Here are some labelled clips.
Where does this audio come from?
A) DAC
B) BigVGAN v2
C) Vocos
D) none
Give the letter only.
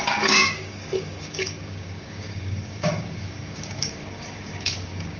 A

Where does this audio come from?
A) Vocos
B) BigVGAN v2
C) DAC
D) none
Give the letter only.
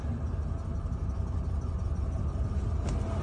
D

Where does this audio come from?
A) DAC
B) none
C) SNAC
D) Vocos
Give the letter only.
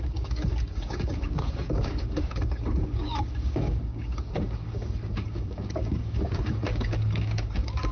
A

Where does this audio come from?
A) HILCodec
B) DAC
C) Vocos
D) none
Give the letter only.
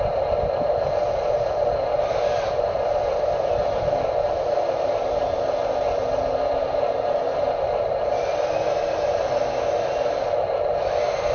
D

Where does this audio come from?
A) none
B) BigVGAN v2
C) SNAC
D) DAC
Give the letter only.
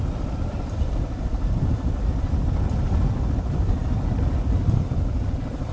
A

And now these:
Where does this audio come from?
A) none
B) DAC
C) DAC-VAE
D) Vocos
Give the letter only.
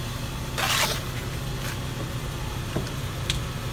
A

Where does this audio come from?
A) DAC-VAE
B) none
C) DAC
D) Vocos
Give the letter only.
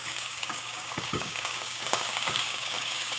C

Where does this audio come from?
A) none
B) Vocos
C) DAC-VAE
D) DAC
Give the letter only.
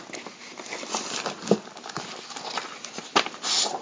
A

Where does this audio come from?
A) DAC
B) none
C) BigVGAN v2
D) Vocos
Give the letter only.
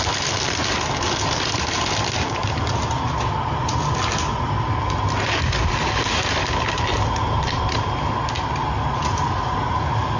B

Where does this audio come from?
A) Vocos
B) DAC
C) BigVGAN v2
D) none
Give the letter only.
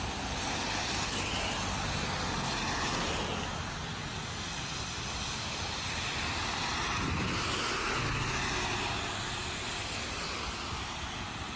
D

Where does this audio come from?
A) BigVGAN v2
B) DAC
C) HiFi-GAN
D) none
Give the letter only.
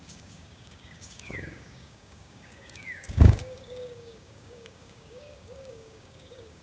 B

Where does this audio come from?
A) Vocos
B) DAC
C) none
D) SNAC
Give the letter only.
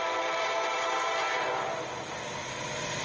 C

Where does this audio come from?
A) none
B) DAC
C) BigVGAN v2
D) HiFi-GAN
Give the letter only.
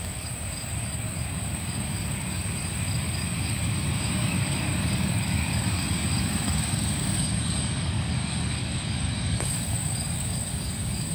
B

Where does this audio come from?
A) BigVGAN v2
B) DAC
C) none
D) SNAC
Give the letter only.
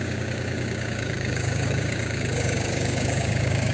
B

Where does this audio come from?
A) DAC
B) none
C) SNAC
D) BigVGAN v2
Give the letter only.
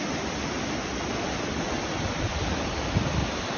B